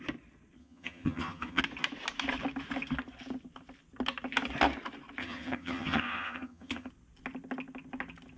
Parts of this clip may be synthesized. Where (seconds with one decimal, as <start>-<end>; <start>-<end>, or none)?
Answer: 0.6-1.6; 5.2-6.9